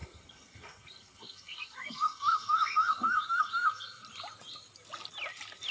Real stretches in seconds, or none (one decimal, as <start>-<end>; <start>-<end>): 4.0-5.7